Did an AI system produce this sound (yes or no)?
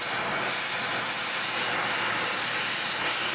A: no